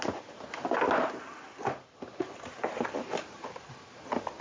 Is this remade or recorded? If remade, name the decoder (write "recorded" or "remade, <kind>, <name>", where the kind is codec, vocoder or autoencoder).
recorded